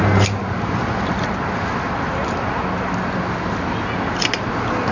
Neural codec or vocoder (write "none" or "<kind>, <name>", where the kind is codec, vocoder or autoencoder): none